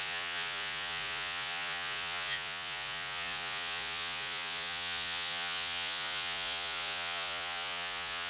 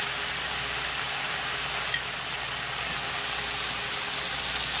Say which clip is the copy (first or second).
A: first